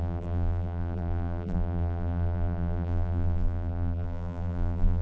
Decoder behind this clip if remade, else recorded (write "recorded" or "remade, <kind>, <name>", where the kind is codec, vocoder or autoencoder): remade, vocoder, BigVGAN v2